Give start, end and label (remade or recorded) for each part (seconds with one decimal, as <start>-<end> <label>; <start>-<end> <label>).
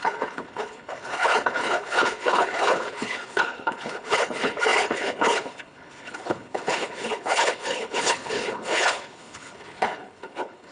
0.0-10.7 remade